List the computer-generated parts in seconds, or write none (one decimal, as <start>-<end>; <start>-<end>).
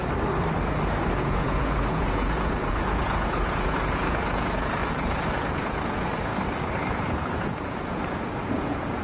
1.1-6.3; 6.9-9.0